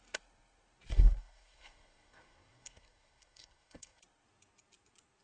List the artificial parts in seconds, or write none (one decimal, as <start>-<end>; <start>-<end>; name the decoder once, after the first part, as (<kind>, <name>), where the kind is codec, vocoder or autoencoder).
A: 0.9-4.0 (codec, SNAC)